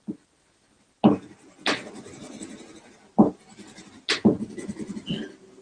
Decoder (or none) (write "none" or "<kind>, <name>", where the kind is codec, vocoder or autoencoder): none